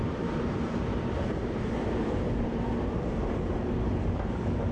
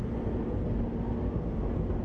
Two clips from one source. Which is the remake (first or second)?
first